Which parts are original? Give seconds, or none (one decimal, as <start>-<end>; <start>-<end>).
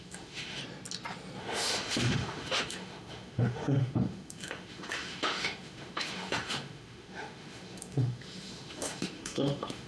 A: 0.6-1.4